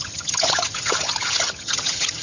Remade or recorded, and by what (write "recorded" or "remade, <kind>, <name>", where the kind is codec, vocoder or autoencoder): remade, vocoder, HiFi-GAN